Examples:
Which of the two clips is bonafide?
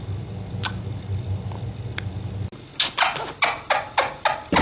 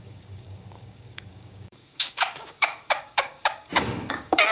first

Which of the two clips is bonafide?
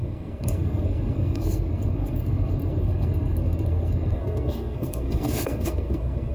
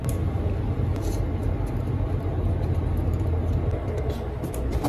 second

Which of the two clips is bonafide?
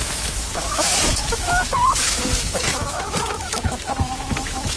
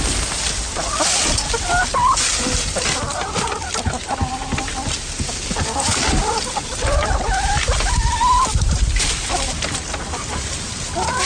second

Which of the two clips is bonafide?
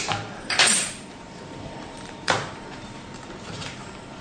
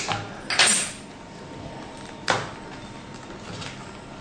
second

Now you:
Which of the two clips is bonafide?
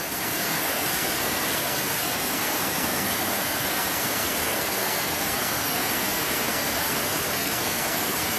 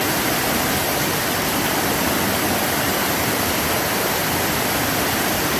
second